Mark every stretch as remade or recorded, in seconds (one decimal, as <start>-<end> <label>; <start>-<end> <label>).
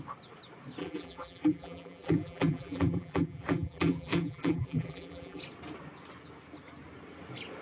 0.0-0.8 recorded; 0.8-5.4 remade; 5.4-7.6 recorded